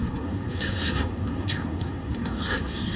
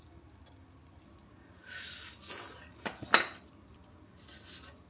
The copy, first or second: first